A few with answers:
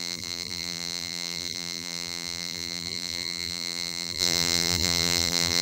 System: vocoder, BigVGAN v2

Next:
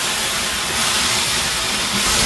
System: none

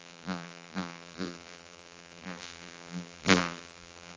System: vocoder, BigVGAN v2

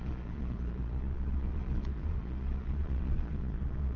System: vocoder, Vocos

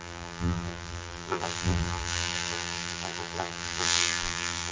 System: vocoder, BigVGAN v2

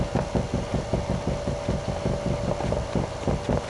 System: none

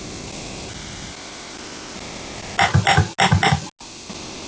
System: none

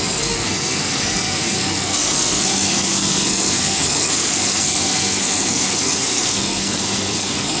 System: codec, SNAC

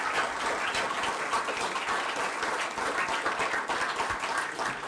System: none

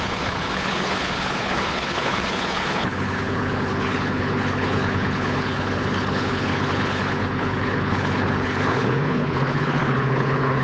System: codec, HILCodec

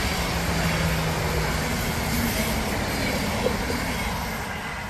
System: none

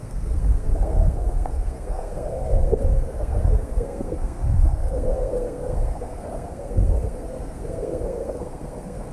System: codec, SNAC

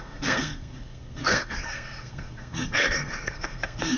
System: codec, SNAC